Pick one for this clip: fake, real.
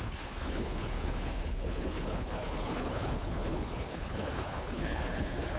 fake